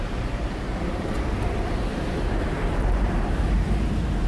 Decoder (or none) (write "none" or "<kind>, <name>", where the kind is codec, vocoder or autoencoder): vocoder, BigVGAN v2